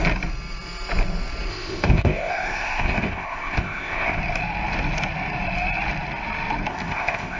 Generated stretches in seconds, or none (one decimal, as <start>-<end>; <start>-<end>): 1.5-4.2; 6.7-7.4